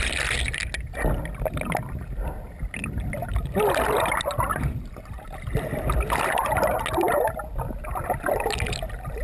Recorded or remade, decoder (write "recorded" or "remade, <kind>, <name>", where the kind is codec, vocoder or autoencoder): recorded